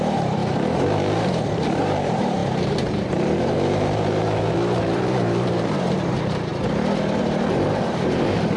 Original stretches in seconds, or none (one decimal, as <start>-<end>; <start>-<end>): 0.4-1.8; 6.5-7.2